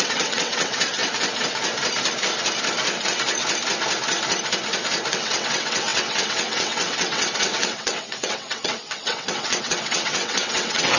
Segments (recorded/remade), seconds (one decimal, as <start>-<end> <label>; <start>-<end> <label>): 0.0-1.0 remade; 1.0-5.1 recorded; 5.1-11.0 remade